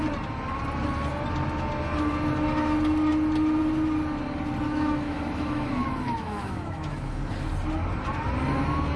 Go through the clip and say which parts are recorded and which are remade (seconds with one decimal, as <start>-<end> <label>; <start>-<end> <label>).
0.0-4.7 recorded; 4.7-7.2 remade; 7.2-9.0 recorded